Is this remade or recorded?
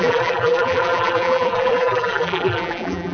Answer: remade